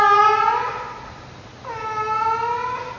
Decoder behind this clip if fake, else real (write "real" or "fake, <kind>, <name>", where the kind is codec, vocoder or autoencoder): real